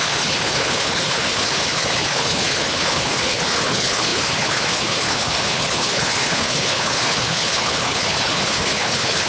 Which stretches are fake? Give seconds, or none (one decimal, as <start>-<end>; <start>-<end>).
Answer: 0.0-9.3